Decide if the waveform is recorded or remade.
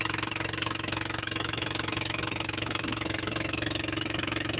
remade